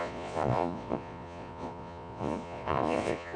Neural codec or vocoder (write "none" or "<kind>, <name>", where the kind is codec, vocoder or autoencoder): vocoder, Vocos